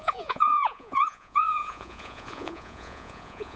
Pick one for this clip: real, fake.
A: fake